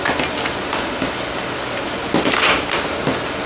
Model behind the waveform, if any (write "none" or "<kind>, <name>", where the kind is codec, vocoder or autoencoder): none